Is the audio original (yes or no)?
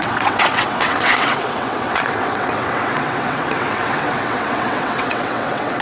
no